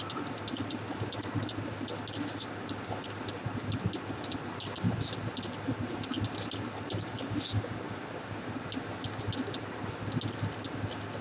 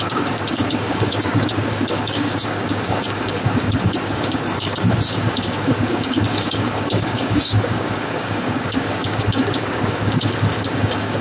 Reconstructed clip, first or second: second